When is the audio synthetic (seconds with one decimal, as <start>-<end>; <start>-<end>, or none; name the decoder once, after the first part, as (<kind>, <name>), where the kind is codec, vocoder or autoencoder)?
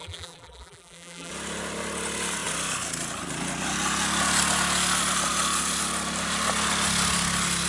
0.0-1.3 (vocoder, BigVGAN v2)